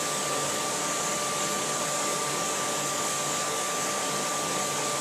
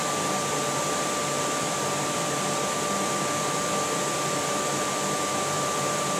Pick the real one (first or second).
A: second